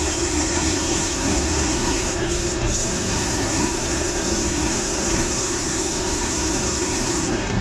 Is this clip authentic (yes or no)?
no